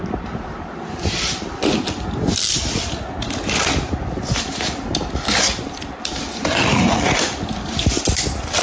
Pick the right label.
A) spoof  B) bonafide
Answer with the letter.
A